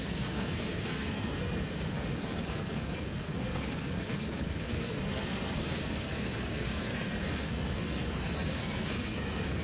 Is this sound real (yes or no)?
no